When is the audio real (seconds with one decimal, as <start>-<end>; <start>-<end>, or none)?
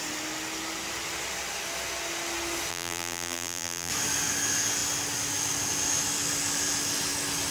0.0-2.7; 3.9-7.5